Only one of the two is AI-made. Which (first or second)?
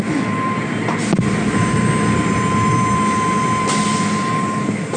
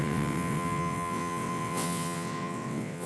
second